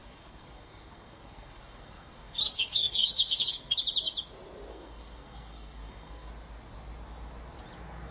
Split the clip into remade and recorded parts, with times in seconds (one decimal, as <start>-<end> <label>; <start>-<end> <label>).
0.0-3.8 remade; 3.8-4.7 recorded; 4.7-6.3 remade; 6.3-8.1 recorded